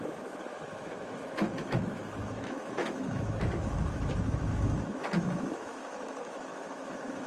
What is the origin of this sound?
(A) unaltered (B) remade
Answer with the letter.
B